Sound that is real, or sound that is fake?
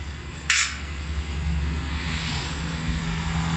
fake